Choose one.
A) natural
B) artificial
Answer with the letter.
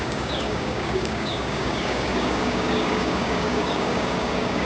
B